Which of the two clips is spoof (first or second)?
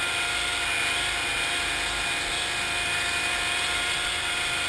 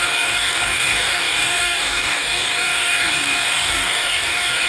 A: second